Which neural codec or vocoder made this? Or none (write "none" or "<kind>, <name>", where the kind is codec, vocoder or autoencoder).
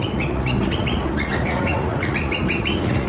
vocoder, Vocos